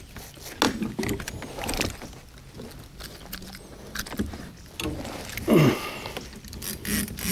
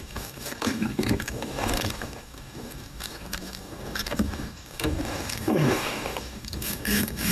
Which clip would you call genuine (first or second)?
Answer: first